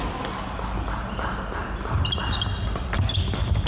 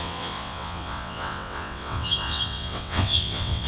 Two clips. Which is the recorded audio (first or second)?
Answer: first